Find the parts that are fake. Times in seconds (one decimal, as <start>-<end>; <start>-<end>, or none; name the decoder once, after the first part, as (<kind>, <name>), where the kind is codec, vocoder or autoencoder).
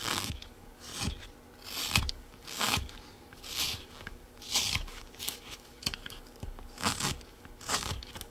0.0-0.9 (codec, DAC); 2.1-8.3